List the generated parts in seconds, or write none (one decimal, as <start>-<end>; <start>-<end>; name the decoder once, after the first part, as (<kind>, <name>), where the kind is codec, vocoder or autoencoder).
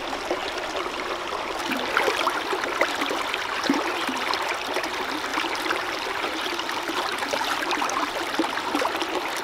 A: 5.3-7.7 (vocoder, BigVGAN v2)